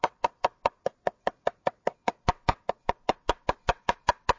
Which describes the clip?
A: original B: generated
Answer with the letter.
B